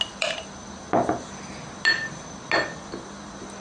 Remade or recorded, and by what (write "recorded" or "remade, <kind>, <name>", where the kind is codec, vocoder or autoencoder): recorded